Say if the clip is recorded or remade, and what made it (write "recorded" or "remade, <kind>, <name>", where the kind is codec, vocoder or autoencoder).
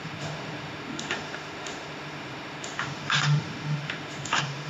remade, autoencoder, DAC-VAE